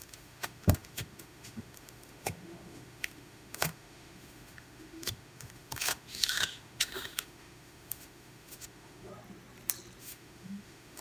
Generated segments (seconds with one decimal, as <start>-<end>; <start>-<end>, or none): 0.0-9.1; 10.0-11.0